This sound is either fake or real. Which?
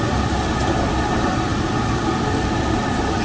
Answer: real